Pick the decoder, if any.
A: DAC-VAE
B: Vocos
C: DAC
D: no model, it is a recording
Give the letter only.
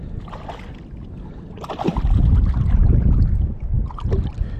D